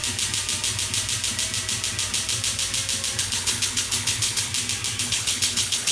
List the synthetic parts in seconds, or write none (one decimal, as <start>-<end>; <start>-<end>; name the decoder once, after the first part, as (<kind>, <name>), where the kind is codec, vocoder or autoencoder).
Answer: 3.2-4.5 (codec, HILCodec); 5.0-5.9